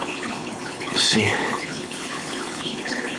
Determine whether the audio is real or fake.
fake